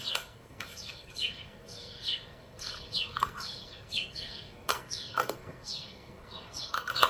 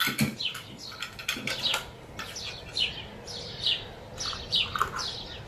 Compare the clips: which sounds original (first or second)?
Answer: second